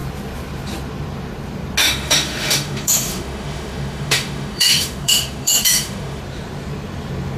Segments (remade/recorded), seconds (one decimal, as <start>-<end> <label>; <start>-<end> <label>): 0.0-1.8 recorded; 1.8-6.2 remade; 6.2-7.4 recorded